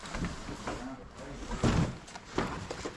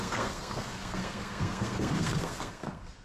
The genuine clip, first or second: first